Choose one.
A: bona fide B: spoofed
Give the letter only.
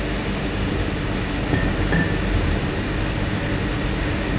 A